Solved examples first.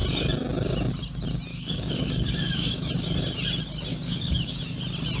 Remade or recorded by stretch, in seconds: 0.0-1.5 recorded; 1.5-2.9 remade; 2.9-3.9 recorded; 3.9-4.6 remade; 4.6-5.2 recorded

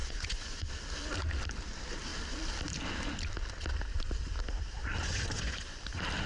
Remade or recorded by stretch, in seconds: 0.0-0.7 remade; 0.7-5.0 recorded; 5.0-5.8 remade; 5.8-6.3 recorded

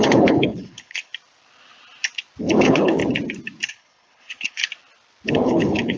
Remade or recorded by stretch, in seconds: 0.0-1.1 remade; 1.1-2.4 recorded; 2.4-3.0 remade; 3.0-3.7 recorded; 3.7-4.6 remade; 4.6-5.3 recorded; 5.3-6.0 remade

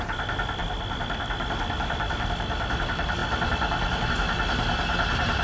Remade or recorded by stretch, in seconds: 0.0-5.4 recorded